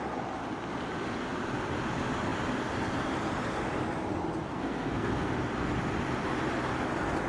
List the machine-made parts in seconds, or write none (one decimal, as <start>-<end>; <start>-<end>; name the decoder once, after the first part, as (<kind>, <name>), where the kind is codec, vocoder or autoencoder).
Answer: 4.5-5.3 (codec, SNAC)